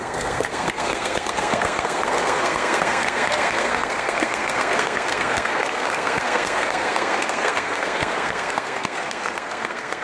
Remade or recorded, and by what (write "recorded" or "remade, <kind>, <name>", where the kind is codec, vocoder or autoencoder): remade, codec, SNAC